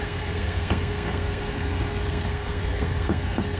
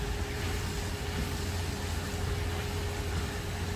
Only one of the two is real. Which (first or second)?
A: second